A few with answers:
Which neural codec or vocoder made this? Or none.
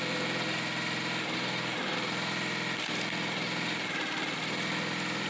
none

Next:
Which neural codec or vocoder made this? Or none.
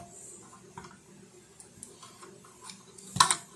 none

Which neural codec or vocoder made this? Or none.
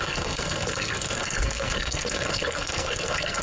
codec, SNAC